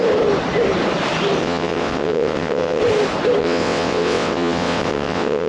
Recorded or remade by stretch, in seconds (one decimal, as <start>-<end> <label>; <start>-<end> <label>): 0.0-1.4 recorded; 1.4-2.8 remade; 2.8-3.4 recorded; 3.4-5.5 remade